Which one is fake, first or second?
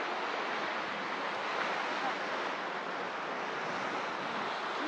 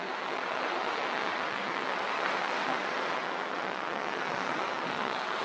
second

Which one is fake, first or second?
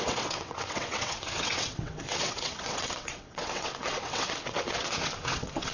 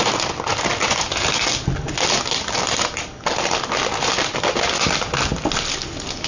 first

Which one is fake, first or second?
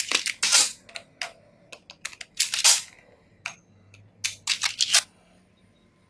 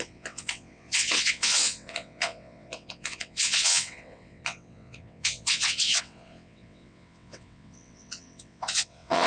second